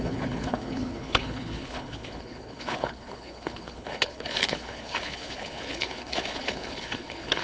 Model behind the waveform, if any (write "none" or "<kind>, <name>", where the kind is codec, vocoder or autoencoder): codec, HILCodec